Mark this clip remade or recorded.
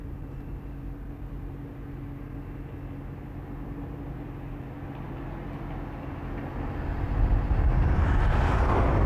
recorded